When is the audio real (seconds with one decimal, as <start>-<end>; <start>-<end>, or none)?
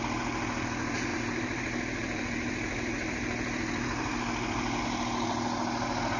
0.0-1.1; 4.8-6.2